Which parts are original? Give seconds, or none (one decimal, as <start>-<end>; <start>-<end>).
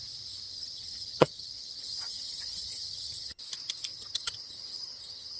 0.0-0.5; 3.4-3.9